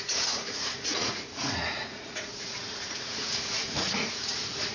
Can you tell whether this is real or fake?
fake